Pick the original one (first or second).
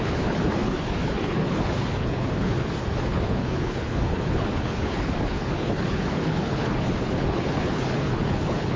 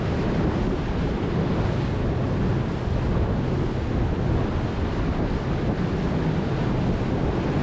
second